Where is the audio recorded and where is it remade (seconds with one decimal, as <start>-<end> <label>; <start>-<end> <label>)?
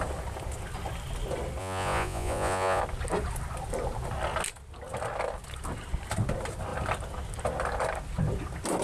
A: 0.0-1.6 recorded; 1.6-2.8 remade; 2.8-8.8 recorded